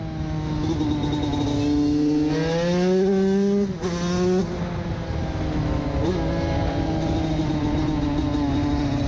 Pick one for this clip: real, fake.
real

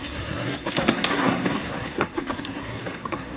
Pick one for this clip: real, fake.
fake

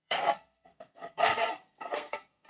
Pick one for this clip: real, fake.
fake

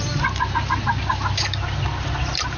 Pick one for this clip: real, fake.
real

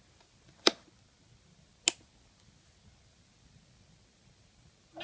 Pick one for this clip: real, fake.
real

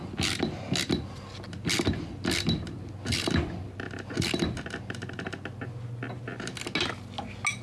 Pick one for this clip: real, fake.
real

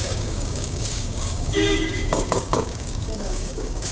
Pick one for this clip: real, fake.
fake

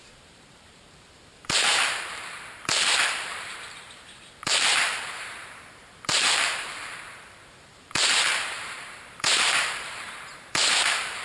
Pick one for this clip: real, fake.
fake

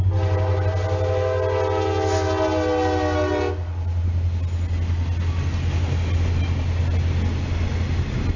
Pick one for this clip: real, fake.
real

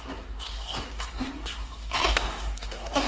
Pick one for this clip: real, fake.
fake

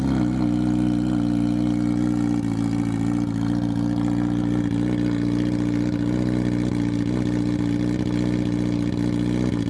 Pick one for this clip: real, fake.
real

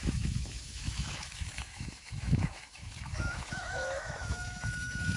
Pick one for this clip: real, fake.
fake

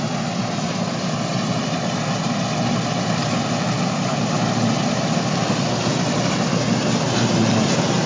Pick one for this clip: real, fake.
real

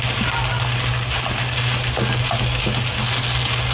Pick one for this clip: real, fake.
real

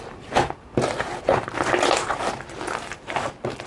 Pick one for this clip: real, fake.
real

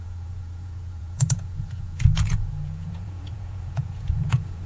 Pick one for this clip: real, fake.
fake